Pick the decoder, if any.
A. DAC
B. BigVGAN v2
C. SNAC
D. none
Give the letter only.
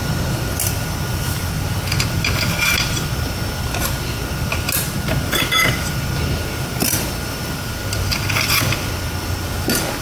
D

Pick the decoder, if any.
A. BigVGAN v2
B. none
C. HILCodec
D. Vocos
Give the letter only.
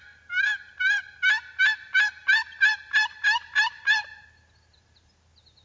B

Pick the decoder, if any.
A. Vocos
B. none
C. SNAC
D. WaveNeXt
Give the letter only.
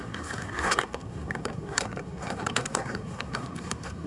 C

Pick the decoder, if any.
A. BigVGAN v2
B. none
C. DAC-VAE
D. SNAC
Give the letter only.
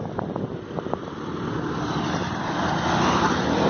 B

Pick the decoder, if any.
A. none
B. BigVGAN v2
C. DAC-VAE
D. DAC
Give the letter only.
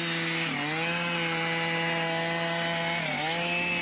A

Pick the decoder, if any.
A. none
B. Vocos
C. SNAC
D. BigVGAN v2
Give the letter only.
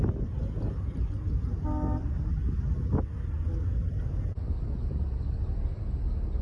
A